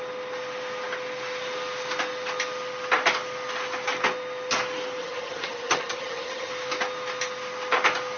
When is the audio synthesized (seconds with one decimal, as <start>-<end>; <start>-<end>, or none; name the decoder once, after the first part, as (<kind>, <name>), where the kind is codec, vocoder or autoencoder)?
5.0-6.5 (vocoder, HiFi-GAN)